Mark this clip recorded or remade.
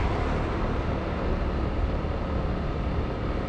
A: recorded